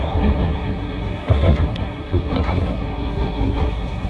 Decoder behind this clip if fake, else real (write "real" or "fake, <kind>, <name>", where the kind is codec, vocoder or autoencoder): fake, codec, SNAC